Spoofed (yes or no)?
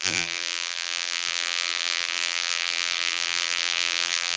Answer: yes